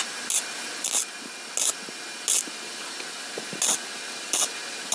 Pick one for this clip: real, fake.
real